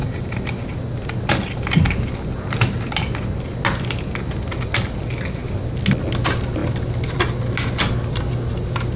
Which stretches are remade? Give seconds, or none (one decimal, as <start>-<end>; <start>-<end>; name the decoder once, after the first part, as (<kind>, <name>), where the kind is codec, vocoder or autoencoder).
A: none